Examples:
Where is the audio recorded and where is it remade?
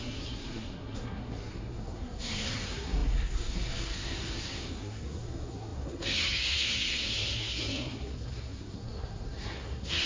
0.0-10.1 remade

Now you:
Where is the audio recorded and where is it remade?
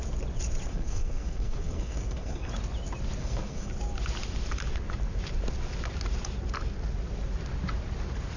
0.0-0.7 recorded; 0.7-2.5 remade; 2.5-3.2 recorded; 3.2-3.7 remade; 3.7-8.4 recorded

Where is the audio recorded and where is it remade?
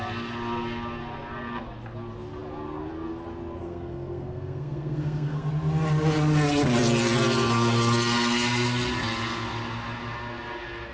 0.0-3.6 recorded; 3.6-5.5 remade; 5.5-10.9 recorded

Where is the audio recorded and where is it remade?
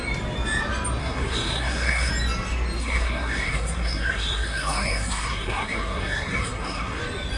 0.0-1.0 recorded; 1.0-2.1 remade; 2.1-2.8 recorded; 2.8-7.0 remade; 7.0-7.4 recorded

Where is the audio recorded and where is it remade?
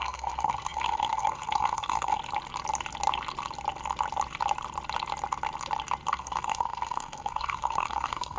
0.0-2.2 remade; 2.2-6.1 recorded; 6.1-8.4 remade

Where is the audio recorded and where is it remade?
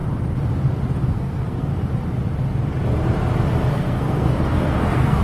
0.0-1.1 recorded; 1.1-1.7 remade; 1.7-3.7 recorded; 3.7-5.2 remade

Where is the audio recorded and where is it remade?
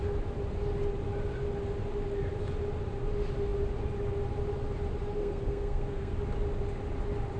0.0-5.2 recorded; 5.2-6.1 remade; 6.1-7.4 recorded